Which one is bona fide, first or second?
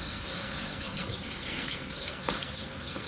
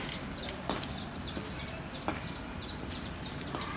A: second